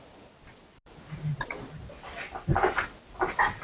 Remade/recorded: recorded